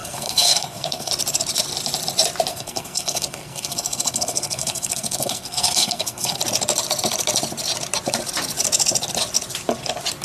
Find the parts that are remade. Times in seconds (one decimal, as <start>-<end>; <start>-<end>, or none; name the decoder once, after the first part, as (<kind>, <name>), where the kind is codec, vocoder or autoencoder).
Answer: 0.0-1.1 (codec, SNAC); 2.5-6.4